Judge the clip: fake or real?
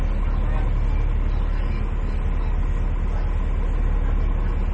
real